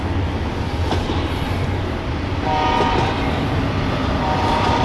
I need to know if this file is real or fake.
real